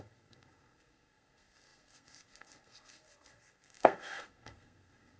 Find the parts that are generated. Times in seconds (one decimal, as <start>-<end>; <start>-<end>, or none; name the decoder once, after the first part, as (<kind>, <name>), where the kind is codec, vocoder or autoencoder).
0.0-5.2 (codec, SNAC)

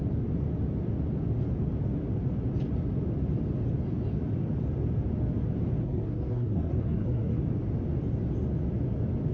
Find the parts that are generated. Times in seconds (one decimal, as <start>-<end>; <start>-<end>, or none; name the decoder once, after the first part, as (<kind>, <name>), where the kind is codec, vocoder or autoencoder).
5.8-7.4 (codec, SNAC)

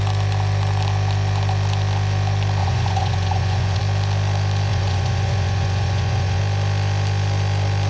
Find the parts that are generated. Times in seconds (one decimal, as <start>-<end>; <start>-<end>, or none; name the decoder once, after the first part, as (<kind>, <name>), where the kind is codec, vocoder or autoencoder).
2.6-3.8 (vocoder, Vocos); 4.7-6.4

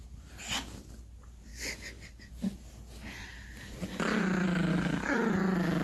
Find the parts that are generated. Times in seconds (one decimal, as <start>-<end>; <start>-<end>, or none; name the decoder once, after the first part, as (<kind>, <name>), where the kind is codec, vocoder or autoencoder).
1.5-2.3 (codec, DAC); 4.7-5.2

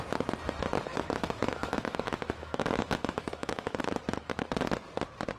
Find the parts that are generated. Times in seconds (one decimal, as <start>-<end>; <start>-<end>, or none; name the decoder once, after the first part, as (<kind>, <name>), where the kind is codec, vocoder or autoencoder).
0.9-3.8 (autoencoder, DAC-VAE)

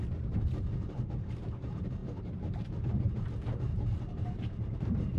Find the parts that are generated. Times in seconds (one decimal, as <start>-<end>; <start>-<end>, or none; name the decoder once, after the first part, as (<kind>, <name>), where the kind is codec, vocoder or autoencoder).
0.0-5.2 (vocoder, BigVGAN v2)

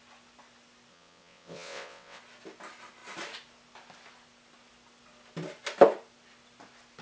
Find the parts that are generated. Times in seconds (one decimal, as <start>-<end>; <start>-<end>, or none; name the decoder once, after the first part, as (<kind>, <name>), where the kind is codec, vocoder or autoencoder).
0.9-2.2 (vocoder, WaveNeXt)

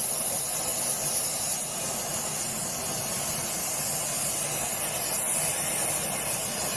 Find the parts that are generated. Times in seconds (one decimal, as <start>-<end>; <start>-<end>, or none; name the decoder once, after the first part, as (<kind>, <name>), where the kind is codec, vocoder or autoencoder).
none